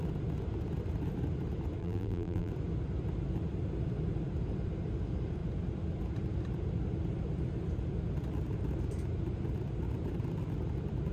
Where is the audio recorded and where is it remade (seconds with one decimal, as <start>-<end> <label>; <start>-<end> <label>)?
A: 0.0-1.8 recorded; 1.8-2.5 remade; 2.5-11.1 recorded